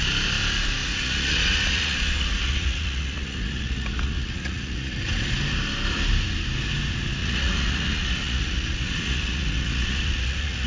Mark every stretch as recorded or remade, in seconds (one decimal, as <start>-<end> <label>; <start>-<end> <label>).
0.0-0.8 recorded; 0.8-5.0 remade; 5.0-7.2 recorded; 7.2-10.7 remade